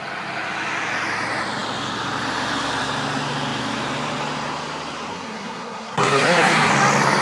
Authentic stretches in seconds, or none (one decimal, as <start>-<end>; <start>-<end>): 0.0-5.1; 6.7-7.2